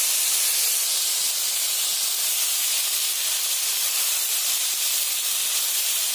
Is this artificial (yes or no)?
yes